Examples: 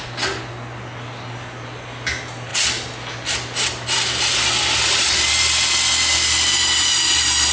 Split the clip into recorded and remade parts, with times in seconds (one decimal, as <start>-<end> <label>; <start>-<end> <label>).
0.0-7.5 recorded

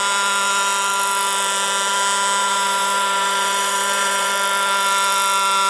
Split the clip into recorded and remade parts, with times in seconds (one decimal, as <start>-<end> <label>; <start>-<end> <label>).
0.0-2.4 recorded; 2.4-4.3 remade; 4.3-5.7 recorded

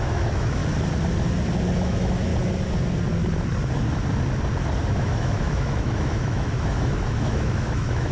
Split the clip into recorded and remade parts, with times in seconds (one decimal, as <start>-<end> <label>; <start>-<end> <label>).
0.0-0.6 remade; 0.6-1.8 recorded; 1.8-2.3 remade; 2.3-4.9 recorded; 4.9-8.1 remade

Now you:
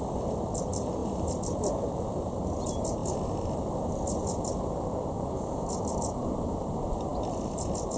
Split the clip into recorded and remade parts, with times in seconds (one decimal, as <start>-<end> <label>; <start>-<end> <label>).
0.0-8.0 recorded